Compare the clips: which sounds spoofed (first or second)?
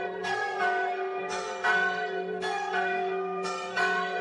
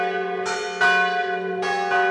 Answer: first